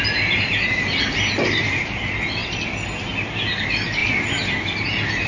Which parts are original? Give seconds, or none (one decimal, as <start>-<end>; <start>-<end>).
0.0-5.3